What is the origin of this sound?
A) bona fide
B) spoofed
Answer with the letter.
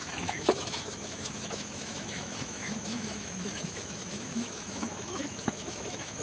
B